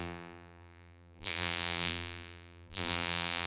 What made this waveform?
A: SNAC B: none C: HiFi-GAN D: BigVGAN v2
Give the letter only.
D